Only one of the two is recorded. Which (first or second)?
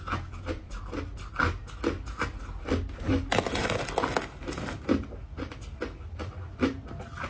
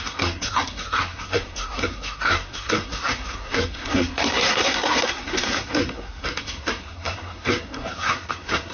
first